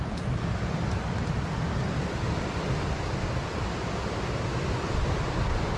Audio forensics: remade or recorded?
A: recorded